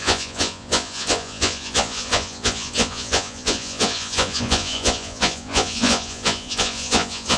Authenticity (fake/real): fake